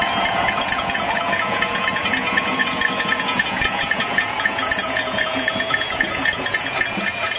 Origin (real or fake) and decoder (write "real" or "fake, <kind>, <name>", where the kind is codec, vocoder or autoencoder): fake, vocoder, Vocos